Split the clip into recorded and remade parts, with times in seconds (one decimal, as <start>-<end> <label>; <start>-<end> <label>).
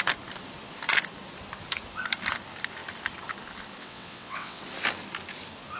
0.0-3.8 recorded; 3.8-4.6 remade; 4.6-5.8 recorded